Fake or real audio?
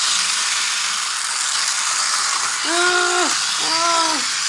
real